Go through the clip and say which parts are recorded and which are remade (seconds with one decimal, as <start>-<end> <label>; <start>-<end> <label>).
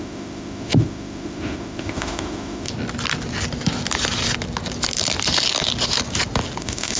0.0-2.7 remade; 2.7-6.6 recorded; 6.6-7.0 remade